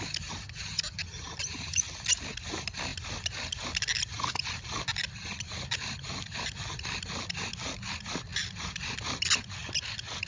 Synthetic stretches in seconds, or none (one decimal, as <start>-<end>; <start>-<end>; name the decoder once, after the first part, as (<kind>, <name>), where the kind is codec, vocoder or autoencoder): 8.3-9.3 (vocoder, BigVGAN v2)

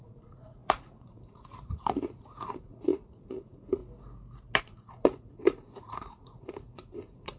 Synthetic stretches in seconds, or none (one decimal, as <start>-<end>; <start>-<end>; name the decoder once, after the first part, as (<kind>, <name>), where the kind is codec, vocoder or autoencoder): 0.0-3.8 (vocoder, Vocos); 4.6-7.4

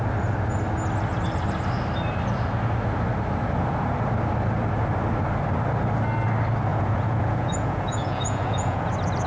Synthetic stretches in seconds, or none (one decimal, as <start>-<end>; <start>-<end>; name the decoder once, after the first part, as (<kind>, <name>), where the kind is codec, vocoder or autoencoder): 6.7-8.9 (vocoder, Vocos)

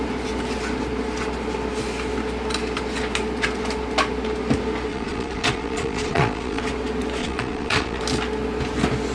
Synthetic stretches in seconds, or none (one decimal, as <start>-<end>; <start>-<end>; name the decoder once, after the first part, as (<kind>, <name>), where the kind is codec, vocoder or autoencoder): 4.9-6.6 (vocoder, Vocos); 7.2-8.0